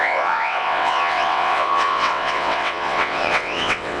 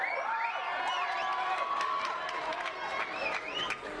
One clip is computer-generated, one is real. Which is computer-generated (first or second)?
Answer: first